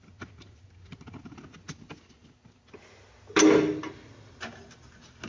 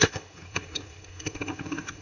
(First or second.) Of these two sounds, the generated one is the second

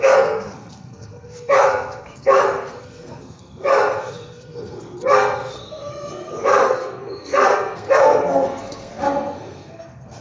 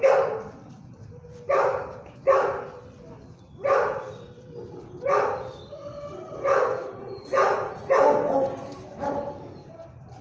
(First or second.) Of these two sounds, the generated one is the first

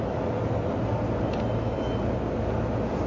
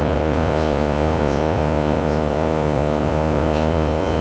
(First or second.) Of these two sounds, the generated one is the second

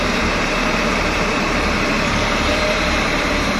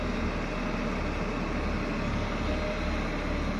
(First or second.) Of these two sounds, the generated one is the first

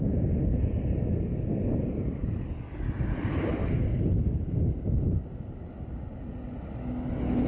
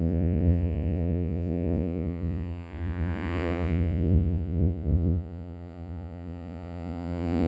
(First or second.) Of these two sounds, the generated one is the second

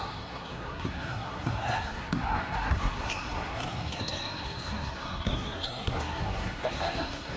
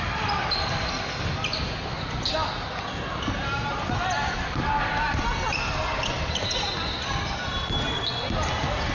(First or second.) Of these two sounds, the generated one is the first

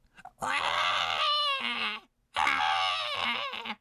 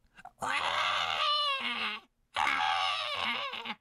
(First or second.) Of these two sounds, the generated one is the second